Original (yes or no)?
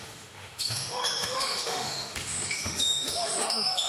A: no